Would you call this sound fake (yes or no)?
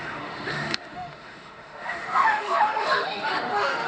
yes